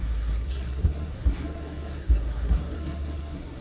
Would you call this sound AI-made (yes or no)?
yes